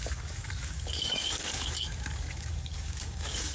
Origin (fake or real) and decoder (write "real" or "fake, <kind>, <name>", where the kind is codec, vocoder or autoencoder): fake, codec, DAC